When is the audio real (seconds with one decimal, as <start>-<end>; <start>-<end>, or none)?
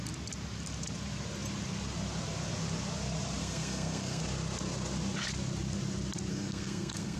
0.0-3.4; 4.2-6.3